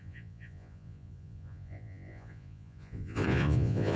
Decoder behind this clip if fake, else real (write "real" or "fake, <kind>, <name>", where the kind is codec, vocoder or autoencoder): fake, vocoder, Vocos